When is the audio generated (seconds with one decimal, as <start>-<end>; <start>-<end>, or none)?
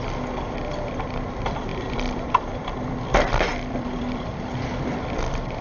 1.7-5.1